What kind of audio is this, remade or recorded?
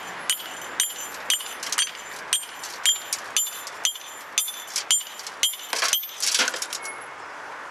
recorded